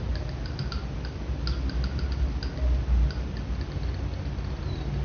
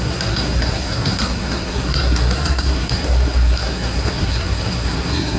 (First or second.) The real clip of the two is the first